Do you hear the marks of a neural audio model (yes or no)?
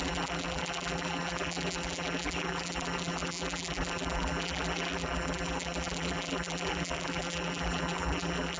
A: yes